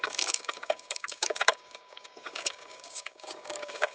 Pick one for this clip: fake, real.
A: fake